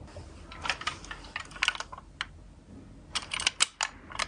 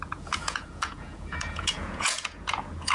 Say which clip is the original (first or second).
first